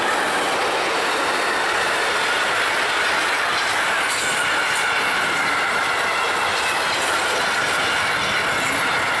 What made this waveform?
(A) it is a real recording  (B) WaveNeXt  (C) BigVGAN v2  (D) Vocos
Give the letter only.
A